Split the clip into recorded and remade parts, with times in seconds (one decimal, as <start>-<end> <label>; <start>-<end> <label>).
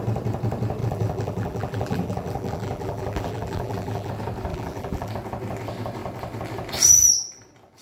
0.0-0.8 recorded; 0.8-4.1 remade; 4.1-4.5 recorded; 4.5-5.1 remade; 5.1-7.8 recorded